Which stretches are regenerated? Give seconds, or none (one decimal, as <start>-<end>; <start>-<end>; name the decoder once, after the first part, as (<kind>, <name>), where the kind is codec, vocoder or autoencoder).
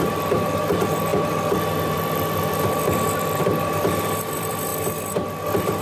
0.0-4.7 (vocoder, BigVGAN v2)